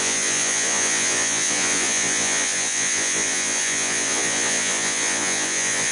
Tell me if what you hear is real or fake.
fake